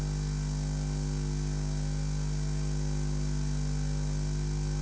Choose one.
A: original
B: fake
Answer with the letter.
A